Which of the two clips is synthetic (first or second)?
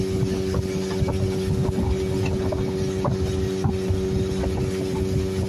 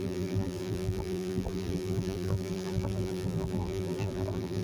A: second